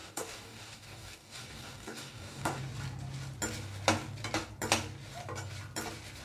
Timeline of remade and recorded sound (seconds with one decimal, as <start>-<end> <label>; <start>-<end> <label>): 0.0-2.6 remade; 2.6-6.2 recorded